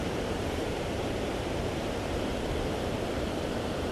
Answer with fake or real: fake